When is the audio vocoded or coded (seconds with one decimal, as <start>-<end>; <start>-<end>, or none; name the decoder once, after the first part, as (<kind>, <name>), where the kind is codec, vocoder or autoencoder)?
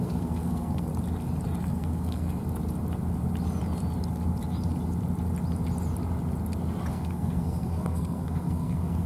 0.0-0.9 (codec, SNAC); 1.6-2.4; 6.9-9.1